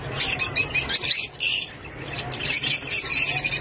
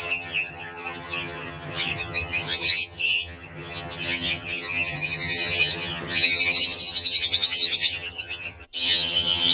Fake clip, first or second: second